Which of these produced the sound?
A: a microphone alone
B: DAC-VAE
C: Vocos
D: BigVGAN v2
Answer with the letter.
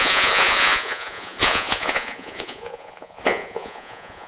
C